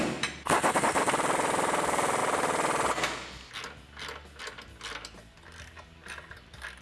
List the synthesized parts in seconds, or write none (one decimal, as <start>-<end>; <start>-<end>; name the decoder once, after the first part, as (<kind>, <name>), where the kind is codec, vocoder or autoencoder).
none